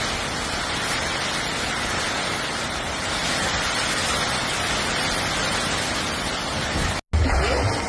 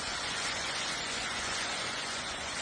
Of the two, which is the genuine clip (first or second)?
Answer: first